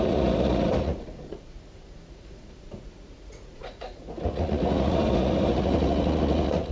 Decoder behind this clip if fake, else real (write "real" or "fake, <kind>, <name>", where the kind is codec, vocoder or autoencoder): fake, vocoder, Vocos